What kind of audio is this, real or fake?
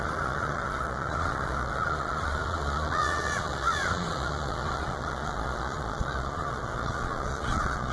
fake